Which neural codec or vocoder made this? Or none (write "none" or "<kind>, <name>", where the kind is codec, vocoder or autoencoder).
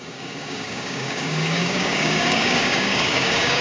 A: codec, DAC